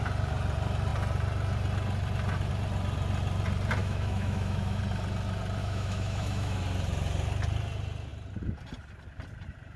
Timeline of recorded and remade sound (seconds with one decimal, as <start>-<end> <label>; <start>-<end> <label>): 0.0-3.8 recorded; 3.8-4.8 remade; 4.8-5.6 recorded; 5.6-6.6 remade; 6.6-9.8 recorded